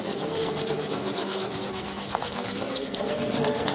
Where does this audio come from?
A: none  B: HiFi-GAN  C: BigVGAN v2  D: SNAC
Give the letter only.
D